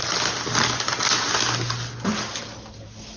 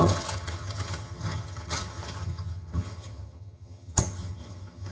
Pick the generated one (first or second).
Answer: second